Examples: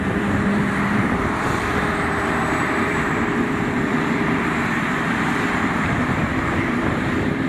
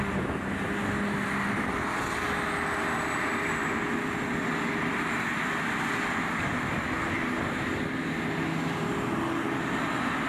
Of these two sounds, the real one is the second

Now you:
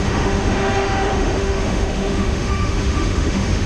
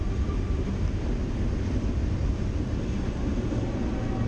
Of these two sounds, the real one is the second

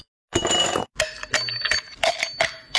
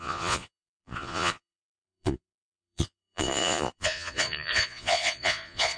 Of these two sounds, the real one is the first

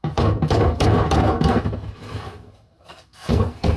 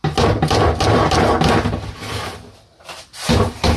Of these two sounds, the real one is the second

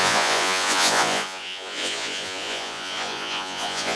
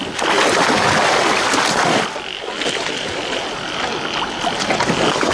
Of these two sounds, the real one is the second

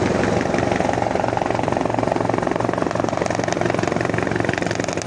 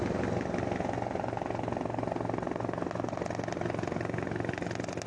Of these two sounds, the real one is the second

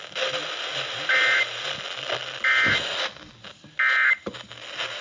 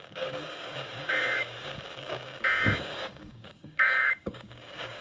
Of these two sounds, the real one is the first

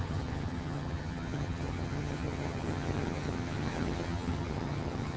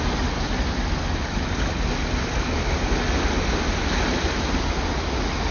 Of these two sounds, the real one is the second